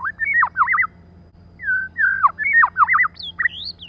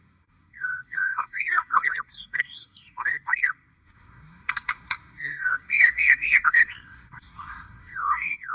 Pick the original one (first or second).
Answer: first